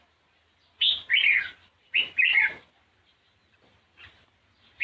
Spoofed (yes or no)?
no